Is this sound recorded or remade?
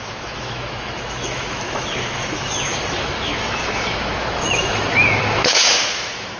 remade